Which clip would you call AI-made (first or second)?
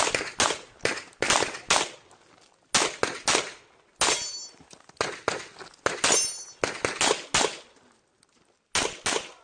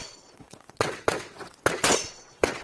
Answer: second